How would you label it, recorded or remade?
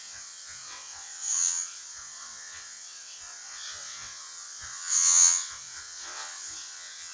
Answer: remade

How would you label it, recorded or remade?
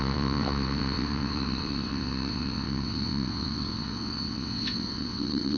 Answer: remade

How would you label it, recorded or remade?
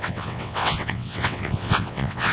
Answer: remade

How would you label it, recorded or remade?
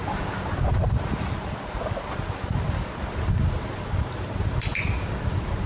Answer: recorded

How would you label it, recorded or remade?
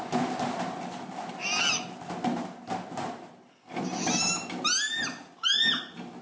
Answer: recorded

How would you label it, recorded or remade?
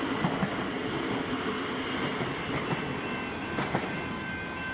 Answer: recorded